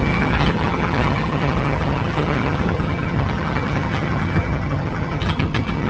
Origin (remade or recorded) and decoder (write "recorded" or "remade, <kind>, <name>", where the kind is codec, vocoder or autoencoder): remade, vocoder, HiFi-GAN